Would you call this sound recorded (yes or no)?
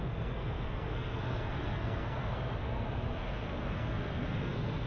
no